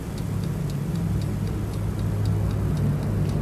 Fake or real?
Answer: real